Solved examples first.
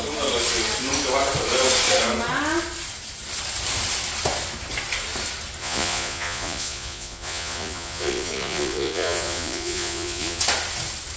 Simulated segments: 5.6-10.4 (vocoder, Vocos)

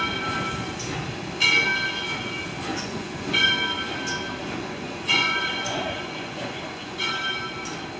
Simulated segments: 2.7-3.5 (vocoder, Vocos); 4.4-7.1